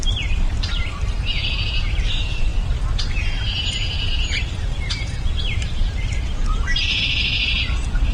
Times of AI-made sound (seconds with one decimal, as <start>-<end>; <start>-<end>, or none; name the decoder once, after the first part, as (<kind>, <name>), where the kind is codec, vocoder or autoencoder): 0.0-8.1 (vocoder, BigVGAN v2)